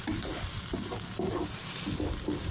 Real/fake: real